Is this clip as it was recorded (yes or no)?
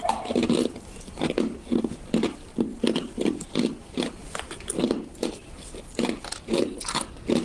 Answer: yes